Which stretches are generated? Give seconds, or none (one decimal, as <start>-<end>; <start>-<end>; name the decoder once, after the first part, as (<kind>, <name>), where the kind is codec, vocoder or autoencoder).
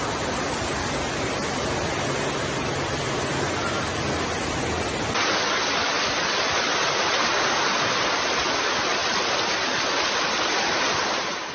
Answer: none